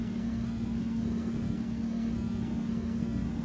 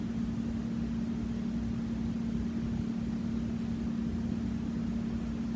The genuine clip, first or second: second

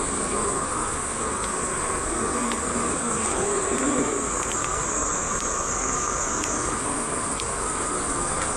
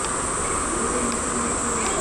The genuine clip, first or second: second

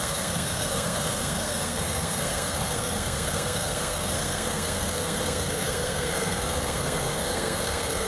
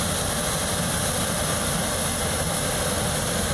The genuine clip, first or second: second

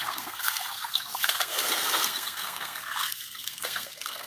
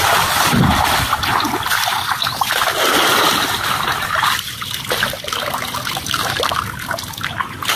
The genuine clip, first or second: second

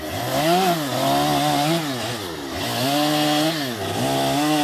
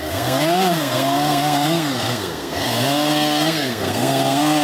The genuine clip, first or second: first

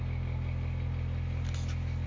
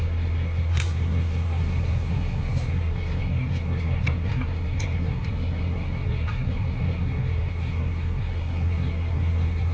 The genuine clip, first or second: first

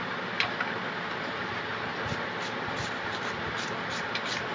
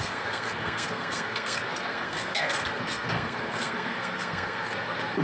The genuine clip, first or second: first